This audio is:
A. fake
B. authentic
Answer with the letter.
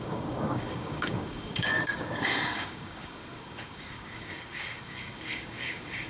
A